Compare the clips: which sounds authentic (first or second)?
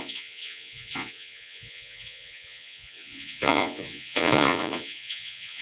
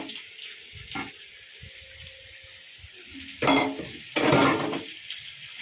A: second